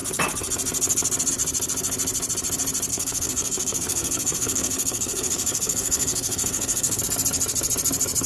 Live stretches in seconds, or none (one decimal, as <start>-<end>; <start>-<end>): 0.0-2.9; 7.0-8.3